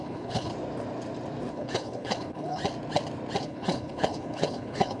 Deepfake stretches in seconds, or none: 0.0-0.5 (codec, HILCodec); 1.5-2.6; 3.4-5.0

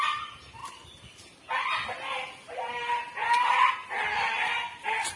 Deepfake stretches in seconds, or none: none

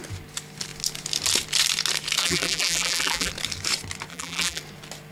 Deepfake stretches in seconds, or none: 2.2-3.3 (vocoder, BigVGAN v2); 4.1-4.6

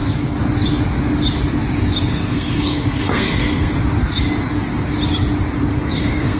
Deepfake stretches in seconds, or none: 2.1-3.7 (codec, SNAC); 5.7-6.4